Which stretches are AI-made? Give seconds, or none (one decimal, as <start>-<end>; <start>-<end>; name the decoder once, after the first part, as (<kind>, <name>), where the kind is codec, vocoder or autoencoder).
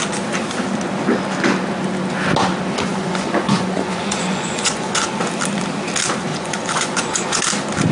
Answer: 2.9-5.2 (vocoder, Vocos); 6.3-7.4